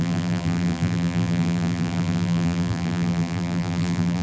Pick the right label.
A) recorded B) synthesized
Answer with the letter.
B